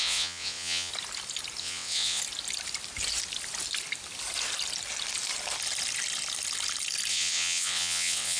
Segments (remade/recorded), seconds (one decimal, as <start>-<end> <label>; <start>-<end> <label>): 0.0-0.9 remade; 0.9-1.6 recorded; 1.6-2.2 remade; 2.2-7.1 recorded; 7.1-8.4 remade